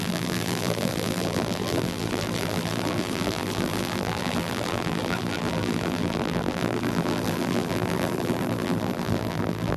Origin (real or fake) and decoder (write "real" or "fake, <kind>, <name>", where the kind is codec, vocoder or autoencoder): fake, vocoder, BigVGAN v2